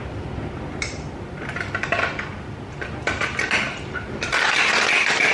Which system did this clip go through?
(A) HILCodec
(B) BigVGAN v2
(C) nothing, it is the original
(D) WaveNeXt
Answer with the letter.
C